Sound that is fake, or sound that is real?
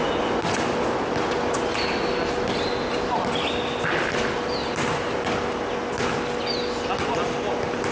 real